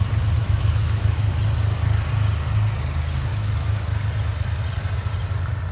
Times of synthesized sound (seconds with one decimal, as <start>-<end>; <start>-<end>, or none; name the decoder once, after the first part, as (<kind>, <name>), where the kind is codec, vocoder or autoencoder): 0.4-1.3 (autoencoder, DAC-VAE); 3.3-4.0